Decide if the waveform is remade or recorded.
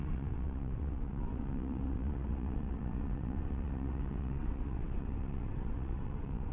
remade